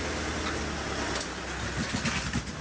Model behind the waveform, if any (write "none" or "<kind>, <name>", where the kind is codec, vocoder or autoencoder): none